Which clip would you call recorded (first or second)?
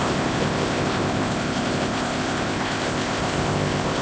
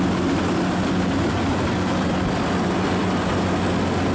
second